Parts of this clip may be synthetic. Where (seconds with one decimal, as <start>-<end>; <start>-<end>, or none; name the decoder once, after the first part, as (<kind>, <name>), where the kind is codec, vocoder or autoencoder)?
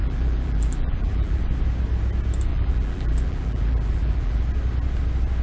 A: 0.0-1.4 (vocoder, BigVGAN v2); 2.5-4.4